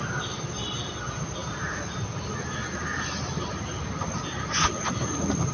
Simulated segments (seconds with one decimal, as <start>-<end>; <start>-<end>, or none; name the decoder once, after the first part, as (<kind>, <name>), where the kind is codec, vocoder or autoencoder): none